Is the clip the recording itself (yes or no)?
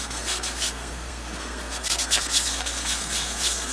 no